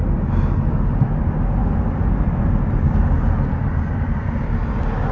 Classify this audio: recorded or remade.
recorded